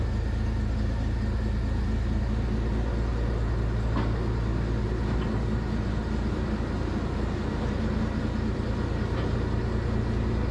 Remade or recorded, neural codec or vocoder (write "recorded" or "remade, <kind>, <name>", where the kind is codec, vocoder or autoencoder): recorded